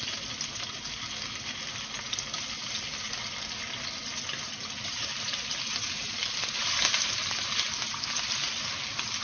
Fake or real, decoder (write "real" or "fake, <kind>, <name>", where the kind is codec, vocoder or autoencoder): real